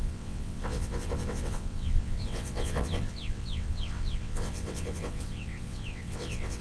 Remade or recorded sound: remade